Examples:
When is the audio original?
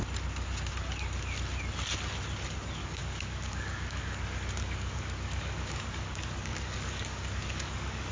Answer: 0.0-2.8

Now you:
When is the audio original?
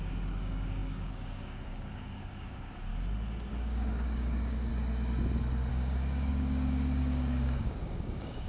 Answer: 2.9-3.5; 4.7-5.7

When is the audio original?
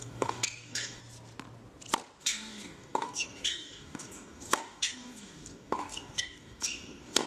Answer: 1.0-2.2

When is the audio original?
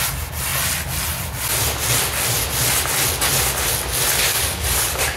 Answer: 0.0-4.3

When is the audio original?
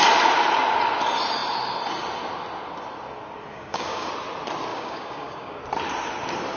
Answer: 0.0-3.5; 4.1-4.7; 5.6-6.6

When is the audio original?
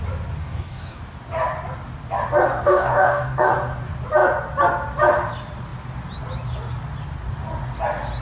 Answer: 0.0-0.4; 1.0-2.5; 3.5-8.2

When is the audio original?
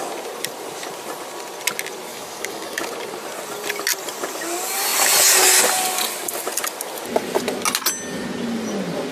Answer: 0.0-2.1; 2.9-9.1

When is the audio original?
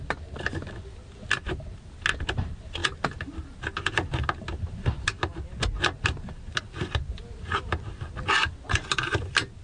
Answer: 0.0-9.6